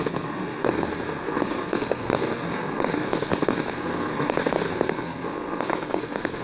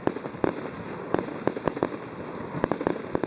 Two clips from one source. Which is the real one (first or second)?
second